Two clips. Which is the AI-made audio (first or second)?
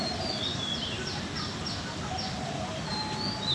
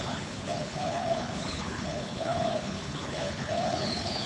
second